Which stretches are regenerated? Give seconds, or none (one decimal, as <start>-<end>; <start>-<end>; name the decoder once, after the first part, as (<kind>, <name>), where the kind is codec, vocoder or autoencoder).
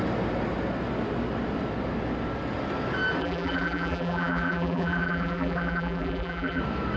3.2-6.6 (vocoder, BigVGAN v2)